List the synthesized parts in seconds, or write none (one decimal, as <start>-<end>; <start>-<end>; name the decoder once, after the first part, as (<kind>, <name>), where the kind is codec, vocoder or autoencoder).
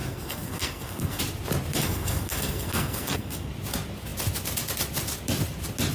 0.0-1.2 (codec, SNAC); 1.7-3.5